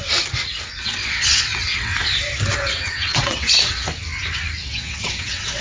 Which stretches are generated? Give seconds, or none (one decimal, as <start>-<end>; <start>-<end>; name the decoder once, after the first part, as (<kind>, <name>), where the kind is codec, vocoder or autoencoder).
0.8-1.9 (vocoder, WaveNeXt); 2.6-3.9; 4.6-5.6